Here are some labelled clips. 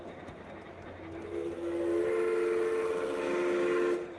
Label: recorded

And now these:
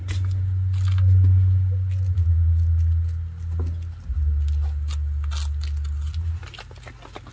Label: recorded